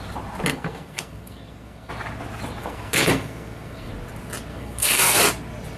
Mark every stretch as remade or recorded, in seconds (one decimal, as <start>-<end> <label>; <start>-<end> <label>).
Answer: 0.0-0.5 recorded; 0.5-1.9 remade; 1.9-2.6 recorded; 2.6-3.9 remade; 3.9-4.5 recorded; 4.5-5.2 remade; 5.2-5.8 recorded